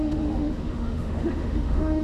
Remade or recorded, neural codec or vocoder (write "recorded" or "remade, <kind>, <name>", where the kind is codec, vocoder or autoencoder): remade, autoencoder, DAC-VAE